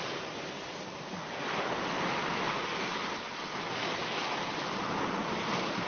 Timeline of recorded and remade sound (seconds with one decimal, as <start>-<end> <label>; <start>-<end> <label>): 0.0-5.9 recorded